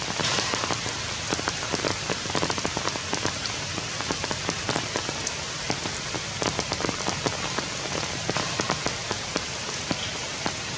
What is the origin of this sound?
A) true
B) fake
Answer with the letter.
A